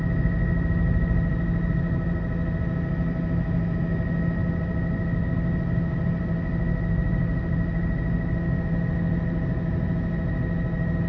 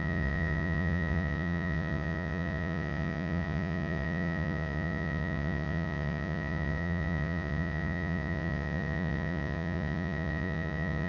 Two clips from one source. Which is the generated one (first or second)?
second